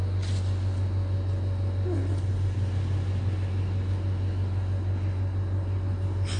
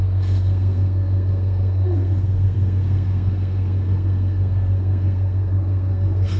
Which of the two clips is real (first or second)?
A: first